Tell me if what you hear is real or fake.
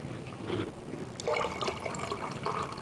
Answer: real